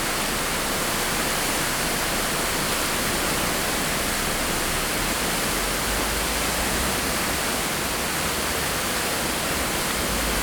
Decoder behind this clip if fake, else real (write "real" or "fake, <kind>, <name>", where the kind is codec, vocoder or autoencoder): real